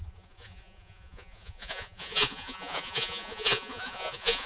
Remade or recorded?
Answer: remade